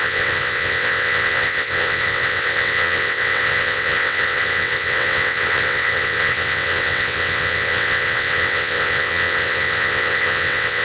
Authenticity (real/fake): fake